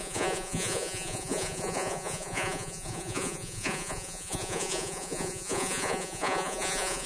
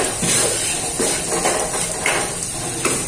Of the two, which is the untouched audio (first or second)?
second